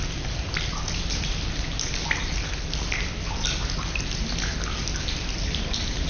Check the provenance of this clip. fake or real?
real